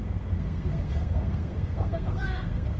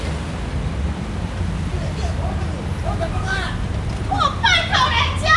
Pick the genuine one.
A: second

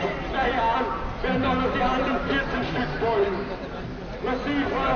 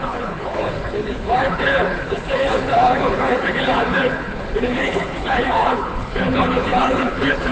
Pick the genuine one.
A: first